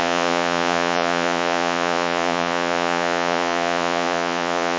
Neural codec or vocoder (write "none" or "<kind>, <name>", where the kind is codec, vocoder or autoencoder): vocoder, Vocos